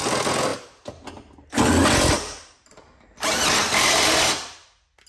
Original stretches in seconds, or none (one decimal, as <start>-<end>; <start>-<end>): 0.0-5.1